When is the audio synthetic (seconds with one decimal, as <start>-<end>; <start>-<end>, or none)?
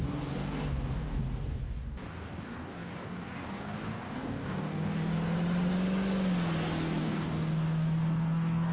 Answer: 0.0-5.1; 7.0-8.7